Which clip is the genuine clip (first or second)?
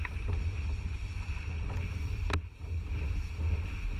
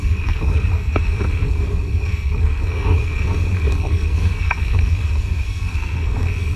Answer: first